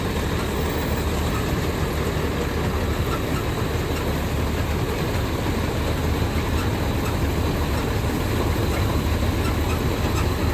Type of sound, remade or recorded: recorded